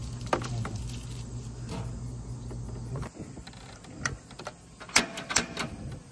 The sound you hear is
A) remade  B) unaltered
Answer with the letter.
B